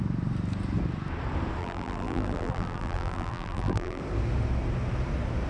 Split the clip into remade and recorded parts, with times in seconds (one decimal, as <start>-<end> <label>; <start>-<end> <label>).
0.0-1.6 recorded; 1.6-4.0 remade; 4.0-5.5 recorded